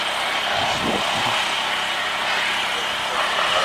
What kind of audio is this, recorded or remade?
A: recorded